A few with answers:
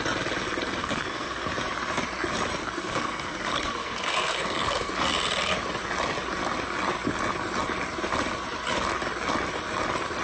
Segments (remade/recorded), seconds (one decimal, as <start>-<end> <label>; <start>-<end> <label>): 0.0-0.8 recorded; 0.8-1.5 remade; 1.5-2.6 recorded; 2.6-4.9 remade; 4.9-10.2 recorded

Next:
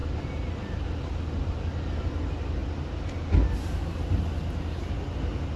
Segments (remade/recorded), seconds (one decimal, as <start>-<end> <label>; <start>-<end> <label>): 0.0-5.6 recorded

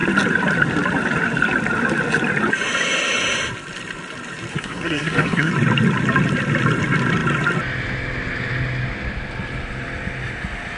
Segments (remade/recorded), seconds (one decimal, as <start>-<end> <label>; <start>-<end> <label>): 0.0-4.5 recorded; 4.5-5.5 remade; 5.5-10.8 recorded

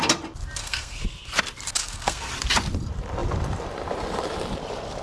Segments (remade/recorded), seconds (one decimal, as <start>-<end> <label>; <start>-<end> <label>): 0.0-0.6 recorded; 0.6-1.4 remade; 1.4-1.8 recorded; 1.8-2.3 remade; 2.3-5.0 recorded

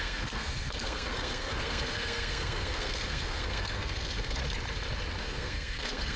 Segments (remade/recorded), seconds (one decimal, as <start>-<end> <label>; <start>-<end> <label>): 0.0-4.4 remade; 4.4-5.2 recorded; 5.2-6.2 remade

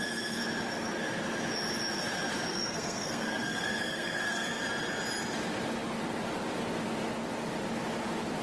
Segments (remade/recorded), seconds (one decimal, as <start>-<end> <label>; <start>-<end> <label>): 0.0-2.5 recorded; 2.5-4.6 remade; 4.6-8.4 recorded

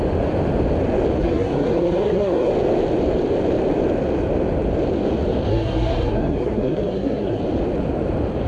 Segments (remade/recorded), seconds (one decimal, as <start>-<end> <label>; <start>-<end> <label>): 0.0-1.2 recorded; 1.2-2.5 remade; 2.5-5.5 recorded; 5.5-7.4 remade; 7.4-8.5 recorded